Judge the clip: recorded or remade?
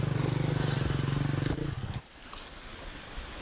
recorded